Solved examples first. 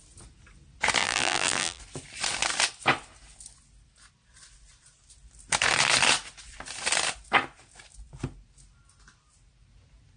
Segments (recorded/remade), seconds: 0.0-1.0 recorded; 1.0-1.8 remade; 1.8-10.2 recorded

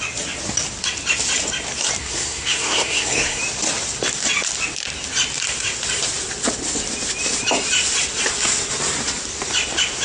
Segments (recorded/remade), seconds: 0.0-2.0 recorded; 2.0-3.4 remade; 3.4-10.0 recorded

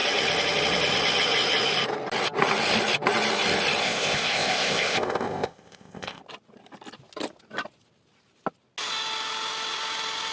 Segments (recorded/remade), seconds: 0.0-3.8 recorded; 3.8-6.2 remade; 6.2-10.3 recorded

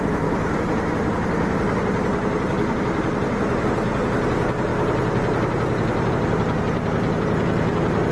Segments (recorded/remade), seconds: 0.0-8.1 recorded